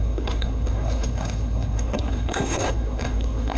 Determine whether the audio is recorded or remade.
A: remade